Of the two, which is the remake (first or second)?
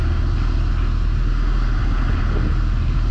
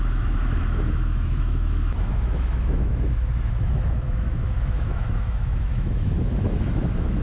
second